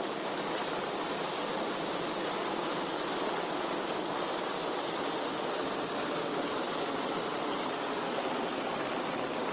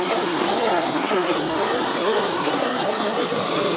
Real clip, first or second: first